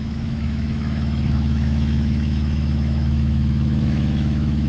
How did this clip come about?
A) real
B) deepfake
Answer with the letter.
B